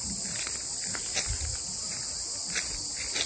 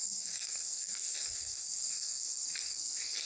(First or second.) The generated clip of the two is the second